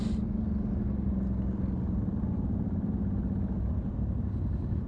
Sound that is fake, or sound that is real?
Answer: real